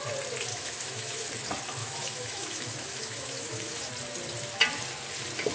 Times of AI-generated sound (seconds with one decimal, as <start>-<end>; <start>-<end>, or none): 0.5-1.3; 1.8-3.9

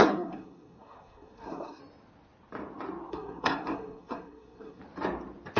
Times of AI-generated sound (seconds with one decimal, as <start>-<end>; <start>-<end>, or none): 0.0-1.8; 3.1-4.8

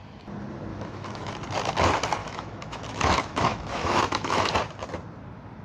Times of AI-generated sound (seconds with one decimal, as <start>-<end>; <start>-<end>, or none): 0.7-1.3; 2.2-4.5

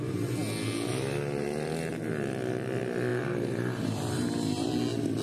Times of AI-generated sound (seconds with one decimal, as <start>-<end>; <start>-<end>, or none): 3.1-4.7

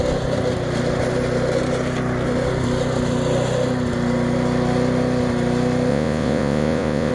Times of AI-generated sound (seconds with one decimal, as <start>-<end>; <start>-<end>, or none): 5.9-7.1

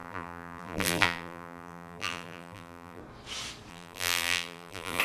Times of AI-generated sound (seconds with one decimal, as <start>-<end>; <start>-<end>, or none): 0.0-3.0; 3.7-5.0